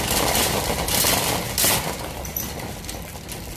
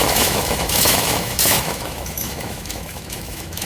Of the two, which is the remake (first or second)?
second